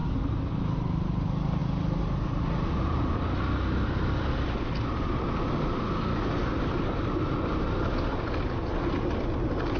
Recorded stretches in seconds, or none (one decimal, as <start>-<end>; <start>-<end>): 0.0-9.8